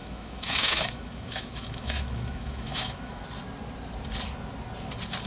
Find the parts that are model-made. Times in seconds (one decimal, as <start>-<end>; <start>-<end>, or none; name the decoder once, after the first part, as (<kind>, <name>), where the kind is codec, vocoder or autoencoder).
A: 0.0-3.2 (autoencoder, DAC-VAE)